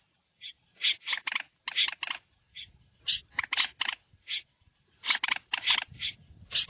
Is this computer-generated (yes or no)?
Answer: no